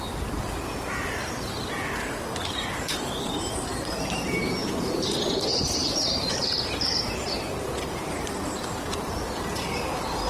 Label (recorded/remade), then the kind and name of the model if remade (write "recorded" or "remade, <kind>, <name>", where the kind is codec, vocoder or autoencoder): remade, vocoder, BigVGAN v2